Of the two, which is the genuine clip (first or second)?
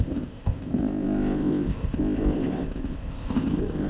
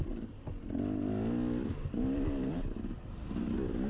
second